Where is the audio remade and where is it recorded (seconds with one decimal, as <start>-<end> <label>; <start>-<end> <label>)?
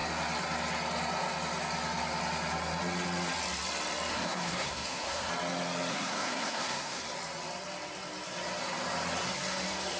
0.0-4.1 recorded; 4.1-5.3 remade; 5.3-5.9 recorded; 5.9-7.0 remade; 7.0-10.0 recorded